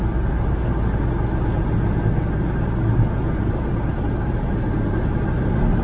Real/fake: real